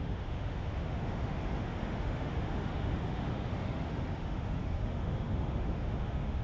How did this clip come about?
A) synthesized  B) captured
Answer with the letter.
A